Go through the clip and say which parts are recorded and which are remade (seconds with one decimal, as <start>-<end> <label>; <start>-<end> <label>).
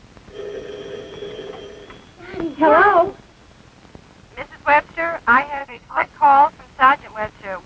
0.0-5.6 recorded; 5.6-6.1 remade; 6.1-7.7 recorded